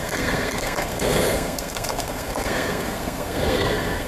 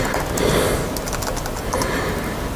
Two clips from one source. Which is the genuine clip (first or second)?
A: second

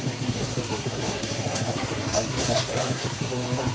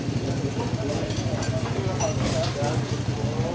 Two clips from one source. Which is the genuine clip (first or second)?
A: second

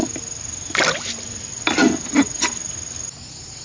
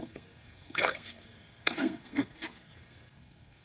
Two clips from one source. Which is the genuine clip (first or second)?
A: first